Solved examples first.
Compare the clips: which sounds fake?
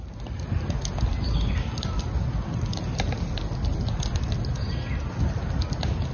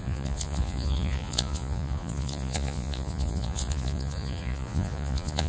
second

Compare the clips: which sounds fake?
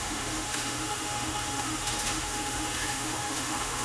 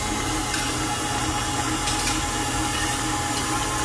first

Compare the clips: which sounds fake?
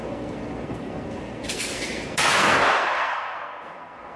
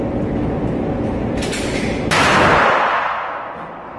first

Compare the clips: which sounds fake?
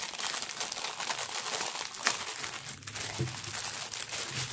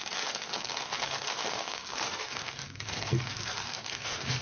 second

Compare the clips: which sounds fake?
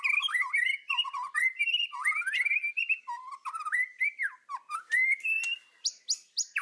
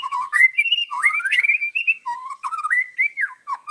second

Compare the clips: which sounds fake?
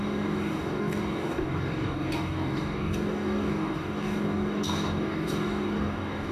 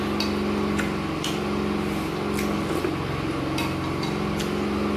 first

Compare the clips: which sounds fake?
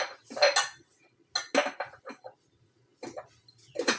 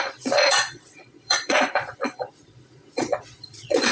second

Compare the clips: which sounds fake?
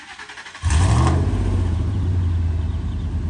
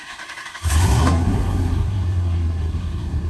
second